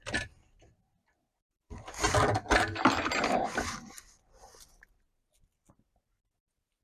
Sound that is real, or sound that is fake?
real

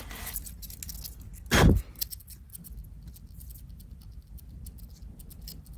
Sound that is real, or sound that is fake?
real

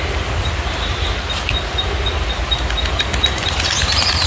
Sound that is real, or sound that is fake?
real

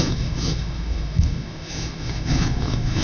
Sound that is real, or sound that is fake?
fake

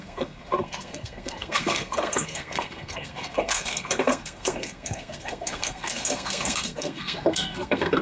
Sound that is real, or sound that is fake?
fake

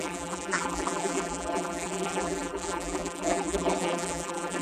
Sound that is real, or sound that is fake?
fake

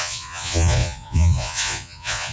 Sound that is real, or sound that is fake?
fake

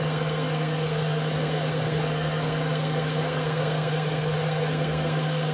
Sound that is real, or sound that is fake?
fake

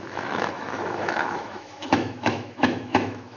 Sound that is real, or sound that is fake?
fake